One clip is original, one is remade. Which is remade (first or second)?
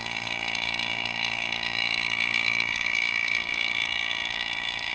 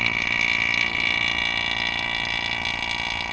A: first